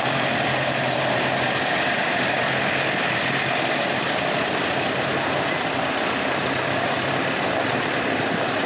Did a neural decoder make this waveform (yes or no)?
yes